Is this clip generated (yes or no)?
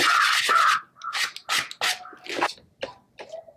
no